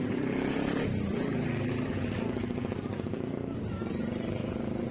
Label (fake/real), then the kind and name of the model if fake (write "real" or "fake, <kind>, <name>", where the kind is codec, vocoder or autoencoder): fake, vocoder, BigVGAN v2